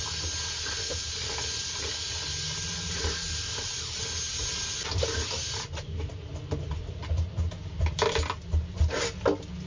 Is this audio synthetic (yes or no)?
no